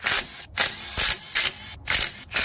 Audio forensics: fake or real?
real